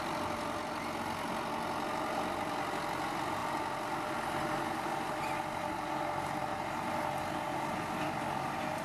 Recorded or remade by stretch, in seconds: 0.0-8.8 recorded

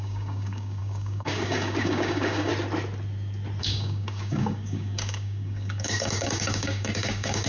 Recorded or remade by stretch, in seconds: 0.0-2.5 remade; 2.5-3.6 recorded; 3.6-7.5 remade

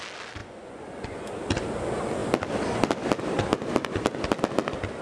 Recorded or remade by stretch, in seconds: 0.0-0.4 recorded; 0.4-1.4 remade; 1.4-5.0 recorded